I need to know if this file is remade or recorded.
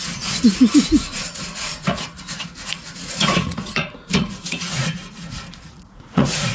remade